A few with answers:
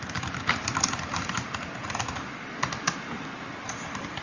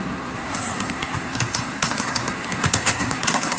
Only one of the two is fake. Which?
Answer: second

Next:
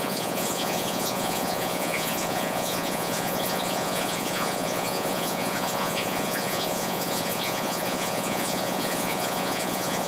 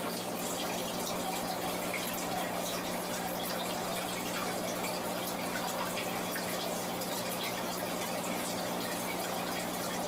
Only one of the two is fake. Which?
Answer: first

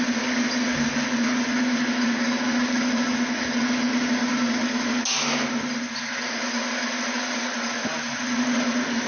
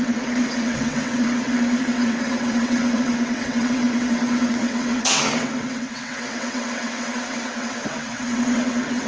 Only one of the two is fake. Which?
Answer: second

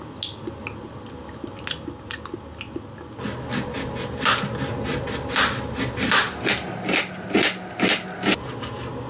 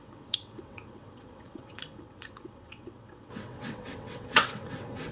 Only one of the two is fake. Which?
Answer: second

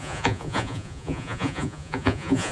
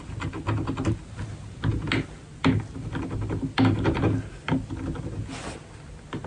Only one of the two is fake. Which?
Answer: first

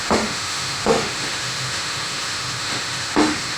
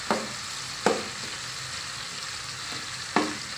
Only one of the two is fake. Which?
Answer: first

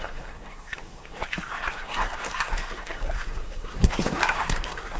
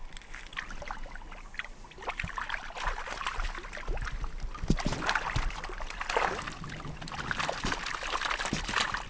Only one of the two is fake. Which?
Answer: first